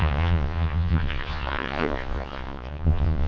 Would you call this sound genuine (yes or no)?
no